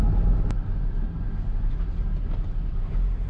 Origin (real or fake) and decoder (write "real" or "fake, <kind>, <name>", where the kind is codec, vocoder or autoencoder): real